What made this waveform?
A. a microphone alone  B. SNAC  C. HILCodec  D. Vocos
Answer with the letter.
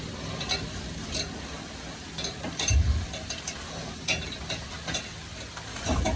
A